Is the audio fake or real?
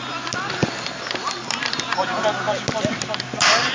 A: real